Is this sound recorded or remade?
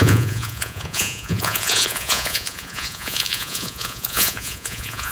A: remade